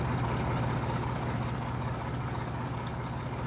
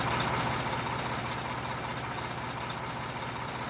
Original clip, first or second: second